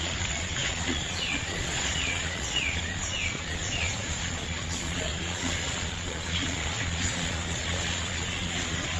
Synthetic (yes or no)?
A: yes